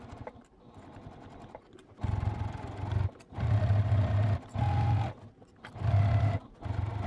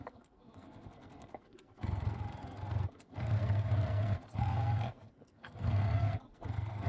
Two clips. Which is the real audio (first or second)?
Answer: first